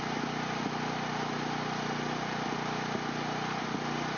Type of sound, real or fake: real